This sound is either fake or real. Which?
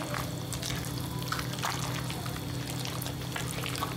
real